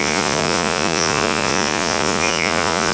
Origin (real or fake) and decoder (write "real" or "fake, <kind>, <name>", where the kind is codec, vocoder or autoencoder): fake, vocoder, Vocos